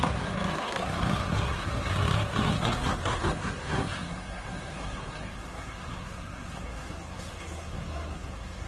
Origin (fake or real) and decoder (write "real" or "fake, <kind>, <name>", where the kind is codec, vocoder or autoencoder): fake, codec, SNAC